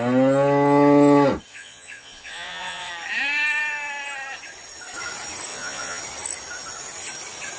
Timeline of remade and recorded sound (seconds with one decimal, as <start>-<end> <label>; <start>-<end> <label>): 0.0-1.5 recorded; 1.5-2.9 remade; 2.9-5.5 recorded; 5.5-6.0 remade; 6.0-7.6 recorded